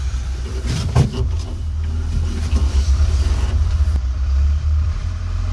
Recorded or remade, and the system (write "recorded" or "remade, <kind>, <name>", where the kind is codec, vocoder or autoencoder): remade, vocoder, BigVGAN v2